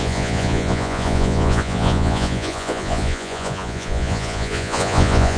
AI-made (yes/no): yes